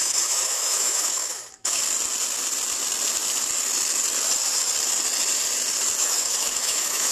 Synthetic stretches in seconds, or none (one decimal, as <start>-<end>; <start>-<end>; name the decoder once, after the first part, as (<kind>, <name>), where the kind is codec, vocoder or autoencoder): 0.0-1.8 (autoencoder, DAC-VAE); 6.0-7.1